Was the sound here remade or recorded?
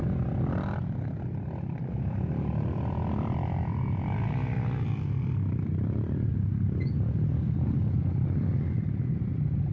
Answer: recorded